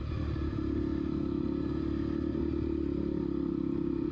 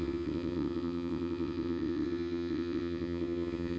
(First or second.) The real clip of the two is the first